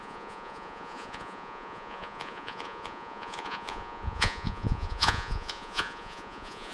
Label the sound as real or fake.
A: fake